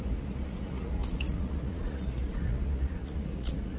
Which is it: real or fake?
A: fake